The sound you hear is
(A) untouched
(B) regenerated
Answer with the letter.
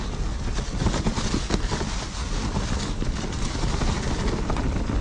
A